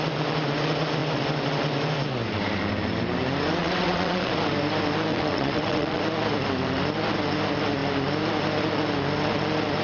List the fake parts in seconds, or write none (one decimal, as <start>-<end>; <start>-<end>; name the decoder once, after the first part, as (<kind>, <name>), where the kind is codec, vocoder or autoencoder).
3.6-4.3 (vocoder, WaveNeXt); 5.1-6.0